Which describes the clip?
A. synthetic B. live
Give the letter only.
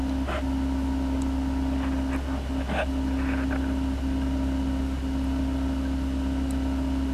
B